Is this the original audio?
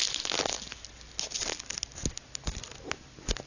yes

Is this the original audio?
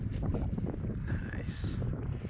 yes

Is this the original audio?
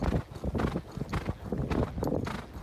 yes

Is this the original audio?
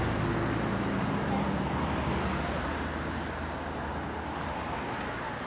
yes